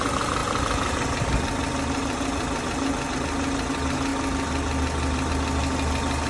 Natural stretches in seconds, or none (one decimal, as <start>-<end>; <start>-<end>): 0.0-6.3

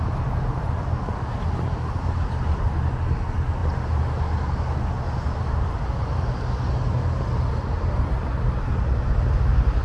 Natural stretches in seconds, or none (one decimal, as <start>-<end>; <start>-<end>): 0.0-9.8

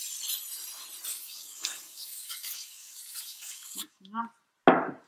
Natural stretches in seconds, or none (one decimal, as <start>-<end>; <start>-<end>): 0.0-1.1; 4.2-5.1

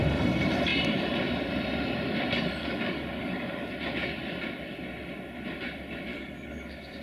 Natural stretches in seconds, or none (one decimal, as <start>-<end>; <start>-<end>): 0.0-2.6; 3.7-6.1

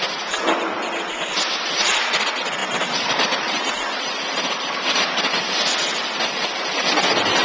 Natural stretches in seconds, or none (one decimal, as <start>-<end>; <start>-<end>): 0.0-2.6; 5.4-7.4

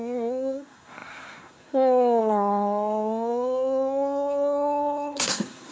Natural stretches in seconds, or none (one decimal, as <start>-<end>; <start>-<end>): none

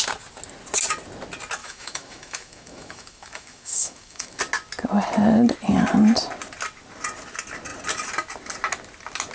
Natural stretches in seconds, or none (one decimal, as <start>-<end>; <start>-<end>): 0.0-1.6; 4.4-9.3

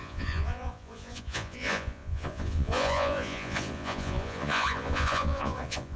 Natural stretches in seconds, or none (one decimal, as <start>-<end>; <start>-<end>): none